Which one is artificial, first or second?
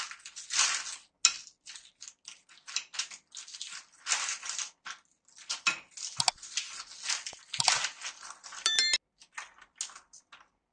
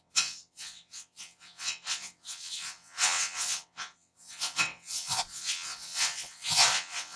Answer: second